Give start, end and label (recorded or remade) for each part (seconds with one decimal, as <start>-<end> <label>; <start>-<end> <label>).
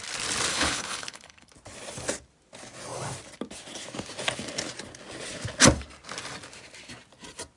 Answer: 0.0-0.5 recorded; 0.5-1.5 remade; 1.5-7.6 recorded